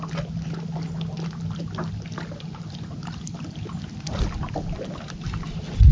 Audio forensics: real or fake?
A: real